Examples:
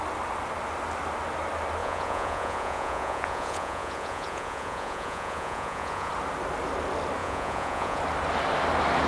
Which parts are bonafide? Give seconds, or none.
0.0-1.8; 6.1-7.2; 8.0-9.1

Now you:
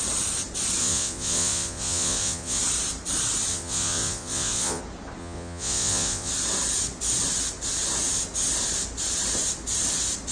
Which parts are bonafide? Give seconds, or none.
0.0-0.8; 2.6-3.5; 4.8-5.2; 6.3-10.3

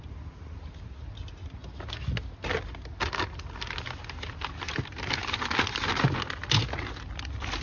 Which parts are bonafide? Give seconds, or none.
0.0-7.6

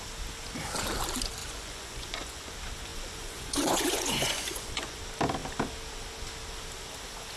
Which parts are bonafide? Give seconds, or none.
0.0-1.4; 2.5-2.9; 5.0-7.4

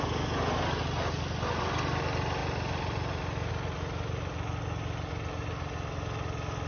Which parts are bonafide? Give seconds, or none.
0.0-6.7